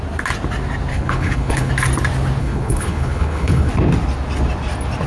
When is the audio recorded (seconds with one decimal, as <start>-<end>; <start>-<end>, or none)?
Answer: 0.0-0.9; 1.7-2.4; 3.7-5.1